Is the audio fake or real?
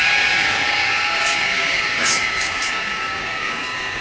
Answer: fake